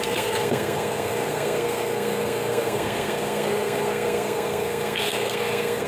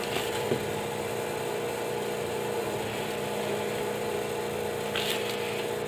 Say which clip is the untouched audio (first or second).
second